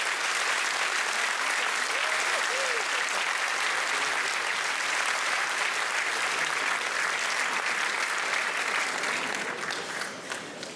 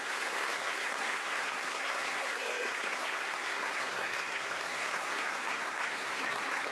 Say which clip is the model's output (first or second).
second